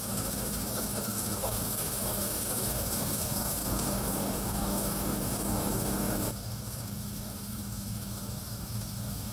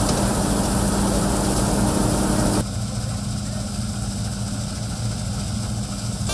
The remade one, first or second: first